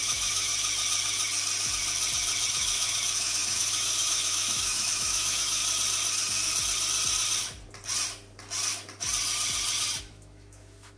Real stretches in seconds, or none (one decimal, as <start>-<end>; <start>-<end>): 0.5-2.5; 5.6-10.0